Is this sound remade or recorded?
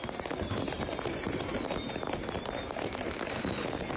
recorded